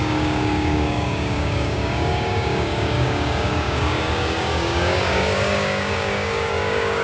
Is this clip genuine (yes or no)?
no